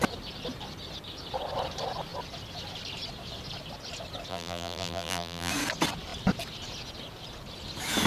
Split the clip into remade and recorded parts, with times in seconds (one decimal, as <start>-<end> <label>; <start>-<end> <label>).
0.0-4.3 recorded; 4.3-5.5 remade; 5.5-8.1 recorded